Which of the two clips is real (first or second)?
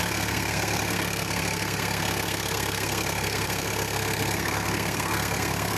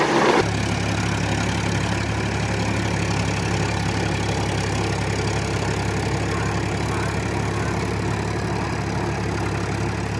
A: second